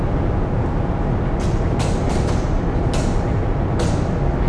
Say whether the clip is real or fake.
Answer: real